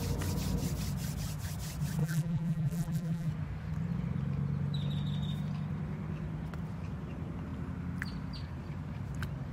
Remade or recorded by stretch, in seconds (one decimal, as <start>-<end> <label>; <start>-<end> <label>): 0.0-2.0 recorded; 2.0-3.3 remade; 3.3-9.5 recorded

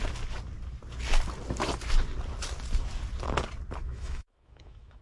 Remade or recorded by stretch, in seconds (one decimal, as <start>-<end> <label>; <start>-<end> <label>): 0.0-3.8 recorded; 3.8-5.0 remade